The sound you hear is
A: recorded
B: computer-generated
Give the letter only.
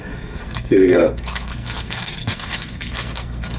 B